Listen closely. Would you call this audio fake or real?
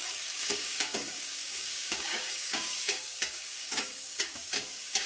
fake